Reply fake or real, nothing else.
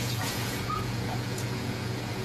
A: fake